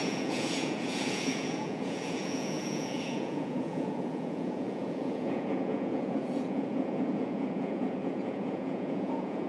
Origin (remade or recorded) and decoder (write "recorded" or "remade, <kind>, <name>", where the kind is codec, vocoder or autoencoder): remade, vocoder, Vocos